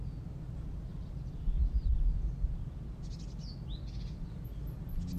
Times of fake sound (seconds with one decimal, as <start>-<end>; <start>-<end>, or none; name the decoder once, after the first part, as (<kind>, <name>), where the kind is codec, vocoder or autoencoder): none